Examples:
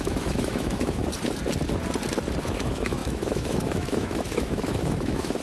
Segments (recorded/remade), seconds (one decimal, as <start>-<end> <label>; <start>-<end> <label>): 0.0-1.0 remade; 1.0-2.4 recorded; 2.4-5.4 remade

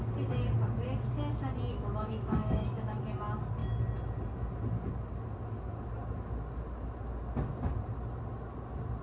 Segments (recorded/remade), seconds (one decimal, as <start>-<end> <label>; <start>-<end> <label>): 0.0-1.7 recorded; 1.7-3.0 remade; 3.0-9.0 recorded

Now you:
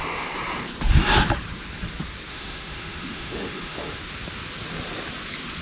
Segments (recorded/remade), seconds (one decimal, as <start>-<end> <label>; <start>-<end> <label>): 0.0-2.3 recorded; 2.3-4.0 remade; 4.0-5.6 recorded

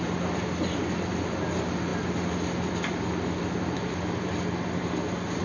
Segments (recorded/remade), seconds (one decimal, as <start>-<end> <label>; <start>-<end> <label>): 0.0-5.4 recorded

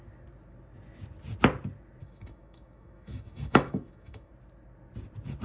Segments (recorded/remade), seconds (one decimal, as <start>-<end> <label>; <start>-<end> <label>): 0.0-2.0 recorded; 2.0-4.3 remade; 4.3-5.4 recorded

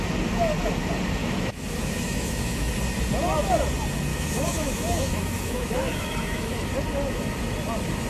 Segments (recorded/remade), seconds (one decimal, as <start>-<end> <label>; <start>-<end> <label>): 0.0-1.2 recorded; 1.2-2.7 remade; 2.7-4.1 recorded; 4.1-6.7 remade; 6.7-8.1 recorded